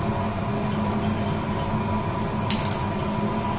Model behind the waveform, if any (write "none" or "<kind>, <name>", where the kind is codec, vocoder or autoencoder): none